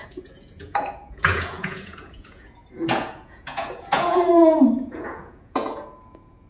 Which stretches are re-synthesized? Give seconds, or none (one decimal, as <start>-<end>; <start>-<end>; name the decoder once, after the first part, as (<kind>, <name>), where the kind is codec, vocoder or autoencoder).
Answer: 0.0-6.5 (vocoder, Vocos)